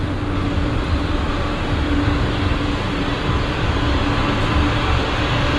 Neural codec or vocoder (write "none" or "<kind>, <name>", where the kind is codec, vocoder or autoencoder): none